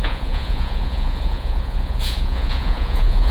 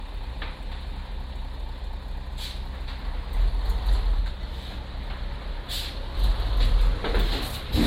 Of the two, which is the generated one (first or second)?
first